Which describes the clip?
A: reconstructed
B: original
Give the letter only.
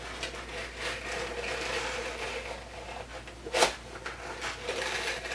B